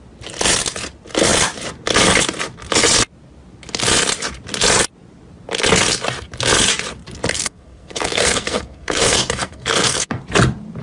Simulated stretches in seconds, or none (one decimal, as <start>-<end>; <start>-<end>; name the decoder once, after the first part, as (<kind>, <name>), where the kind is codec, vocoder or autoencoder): 7.3-10.2 (codec, SNAC)